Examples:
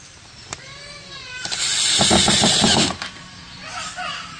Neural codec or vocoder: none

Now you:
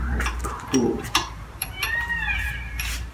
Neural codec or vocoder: vocoder, BigVGAN v2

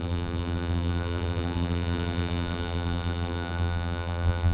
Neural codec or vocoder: vocoder, BigVGAN v2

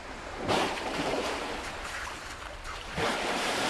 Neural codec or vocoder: vocoder, BigVGAN v2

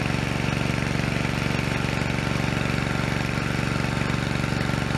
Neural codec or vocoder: none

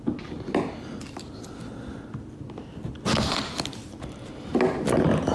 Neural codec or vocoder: none